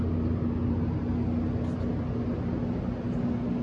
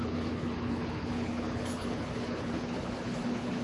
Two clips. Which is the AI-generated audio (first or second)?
second